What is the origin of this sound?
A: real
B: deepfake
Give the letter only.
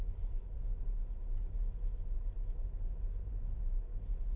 A